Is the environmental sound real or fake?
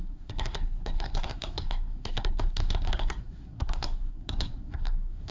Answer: fake